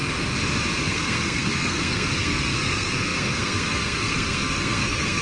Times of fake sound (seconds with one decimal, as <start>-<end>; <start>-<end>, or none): 0.8-5.2